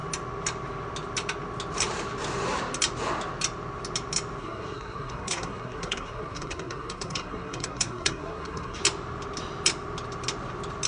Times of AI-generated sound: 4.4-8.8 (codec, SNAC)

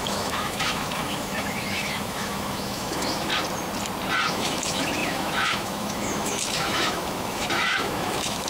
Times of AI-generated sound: 0.0-3.3 (autoencoder, DAC-VAE); 4.3-8.5

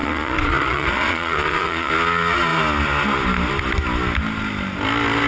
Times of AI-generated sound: 0.0-1.9 (vocoder, Vocos)

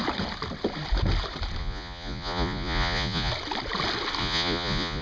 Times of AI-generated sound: 1.6-3.3 (vocoder, Vocos); 4.2-5.0

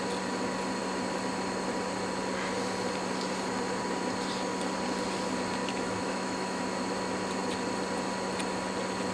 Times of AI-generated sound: 5.6-6.6 (autoencoder, DAC-VAE)